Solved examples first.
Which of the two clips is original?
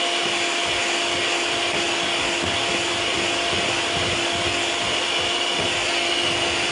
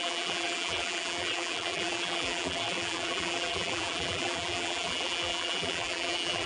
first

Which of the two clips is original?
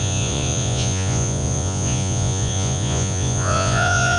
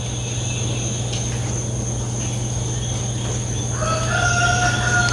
second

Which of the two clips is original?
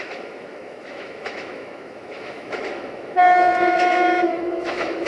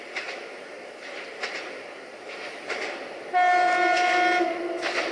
second